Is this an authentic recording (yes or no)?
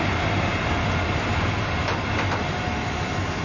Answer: yes